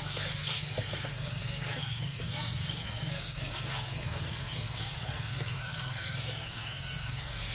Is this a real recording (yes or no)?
no